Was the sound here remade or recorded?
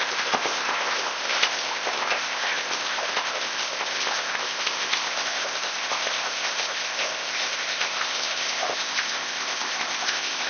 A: remade